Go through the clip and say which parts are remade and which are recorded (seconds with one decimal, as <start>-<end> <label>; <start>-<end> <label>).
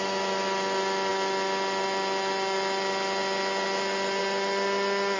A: 0.0-5.2 recorded